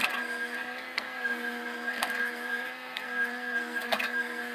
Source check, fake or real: fake